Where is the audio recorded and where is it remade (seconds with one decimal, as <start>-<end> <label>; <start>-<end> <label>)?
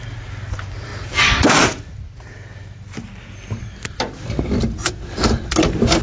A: 0.0-6.0 recorded